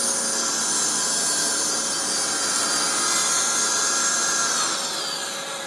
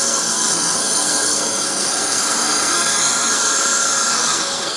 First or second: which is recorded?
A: first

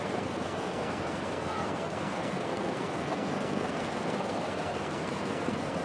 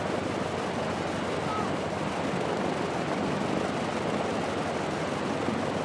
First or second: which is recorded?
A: second